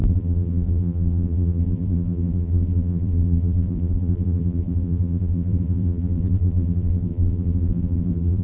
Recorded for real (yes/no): no